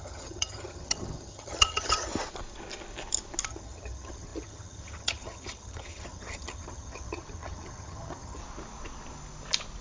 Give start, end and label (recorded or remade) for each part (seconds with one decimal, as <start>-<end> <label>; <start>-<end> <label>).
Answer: 0.0-2.1 remade; 2.1-3.5 recorded; 3.5-8.4 remade; 8.4-9.8 recorded